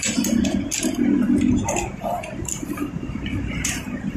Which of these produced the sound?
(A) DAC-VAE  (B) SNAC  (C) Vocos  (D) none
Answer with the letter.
D